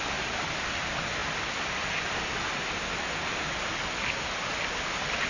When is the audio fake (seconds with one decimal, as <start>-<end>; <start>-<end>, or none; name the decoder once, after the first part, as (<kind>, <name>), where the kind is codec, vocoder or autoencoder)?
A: none

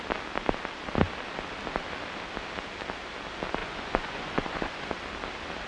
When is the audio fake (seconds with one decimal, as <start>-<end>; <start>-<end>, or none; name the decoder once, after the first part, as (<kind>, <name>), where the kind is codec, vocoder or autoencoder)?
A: 3.6-4.9 (vocoder, Vocos)